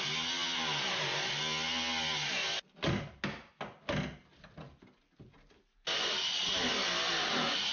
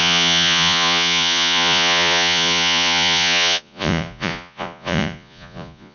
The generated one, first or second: second